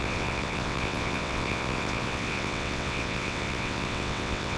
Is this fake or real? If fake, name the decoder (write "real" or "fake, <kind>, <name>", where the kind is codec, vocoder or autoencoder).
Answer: fake, vocoder, WaveNeXt